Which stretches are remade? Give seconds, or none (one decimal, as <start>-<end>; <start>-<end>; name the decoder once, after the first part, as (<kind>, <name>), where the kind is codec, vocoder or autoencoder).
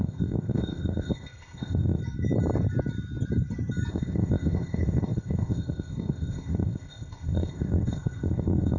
0.0-2.0 (codec, ZipCodec); 3.9-8.8